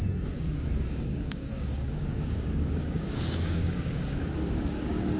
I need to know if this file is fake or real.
fake